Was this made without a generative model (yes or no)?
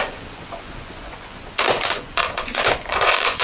no